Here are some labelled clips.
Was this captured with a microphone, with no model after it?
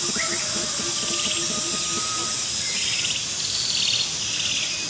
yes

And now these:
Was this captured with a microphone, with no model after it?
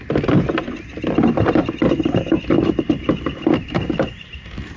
yes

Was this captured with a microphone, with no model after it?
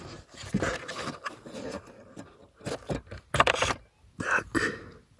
yes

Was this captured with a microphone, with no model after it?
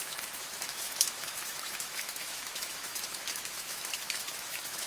no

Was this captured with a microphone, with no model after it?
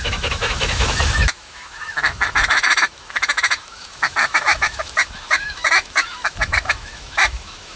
no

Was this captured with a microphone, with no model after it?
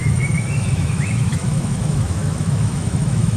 no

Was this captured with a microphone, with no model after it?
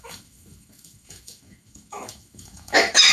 no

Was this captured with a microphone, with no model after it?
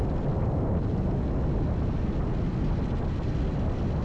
yes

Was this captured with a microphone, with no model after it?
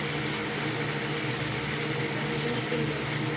yes